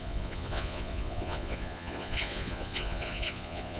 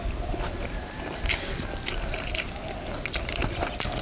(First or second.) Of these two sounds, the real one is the second